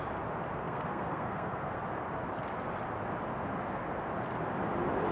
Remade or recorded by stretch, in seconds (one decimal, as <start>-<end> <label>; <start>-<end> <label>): 0.0-0.6 recorded; 0.6-1.8 remade; 1.8-5.1 recorded

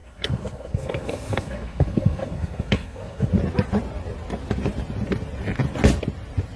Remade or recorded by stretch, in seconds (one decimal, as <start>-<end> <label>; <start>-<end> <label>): 0.0-3.3 remade; 3.3-6.6 recorded

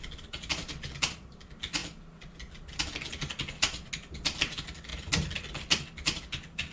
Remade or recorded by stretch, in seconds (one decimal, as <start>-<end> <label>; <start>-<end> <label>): 0.0-6.7 recorded